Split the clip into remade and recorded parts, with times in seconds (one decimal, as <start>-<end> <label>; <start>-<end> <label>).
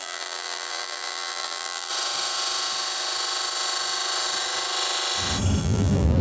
0.0-1.9 remade; 1.9-5.6 recorded; 5.6-6.2 remade